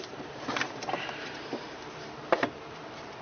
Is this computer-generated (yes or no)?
yes